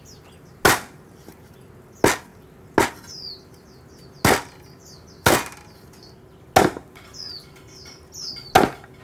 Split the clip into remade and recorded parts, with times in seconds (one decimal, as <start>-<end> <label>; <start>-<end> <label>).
0.0-9.0 recorded